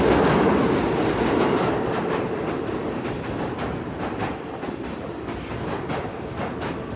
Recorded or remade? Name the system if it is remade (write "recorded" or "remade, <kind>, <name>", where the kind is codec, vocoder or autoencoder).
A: recorded